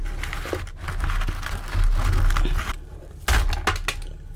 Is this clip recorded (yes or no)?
yes